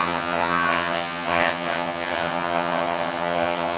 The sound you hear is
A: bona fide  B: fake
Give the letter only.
B